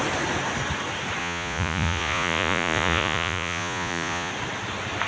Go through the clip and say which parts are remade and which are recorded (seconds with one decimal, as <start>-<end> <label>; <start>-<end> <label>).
0.0-1.2 recorded; 1.2-4.3 remade; 4.3-5.1 recorded